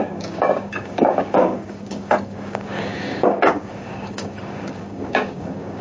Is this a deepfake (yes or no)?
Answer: yes